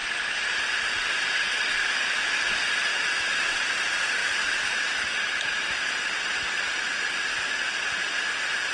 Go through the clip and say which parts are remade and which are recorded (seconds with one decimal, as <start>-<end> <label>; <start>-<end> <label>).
0.0-1.8 recorded; 1.8-2.3 remade; 2.3-2.9 recorded; 2.9-3.6 remade; 3.6-4.2 recorded; 4.2-5.9 remade; 5.9-8.7 recorded